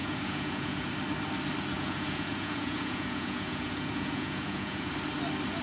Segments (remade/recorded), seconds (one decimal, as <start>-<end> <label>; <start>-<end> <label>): 0.0-0.9 remade; 0.9-1.7 recorded; 1.7-4.9 remade; 4.9-5.6 recorded